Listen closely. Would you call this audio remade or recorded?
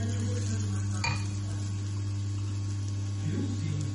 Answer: recorded